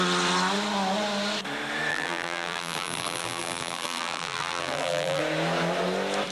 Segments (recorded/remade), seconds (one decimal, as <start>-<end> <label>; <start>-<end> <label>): 0.0-1.9 recorded; 1.9-5.2 remade; 5.2-6.3 recorded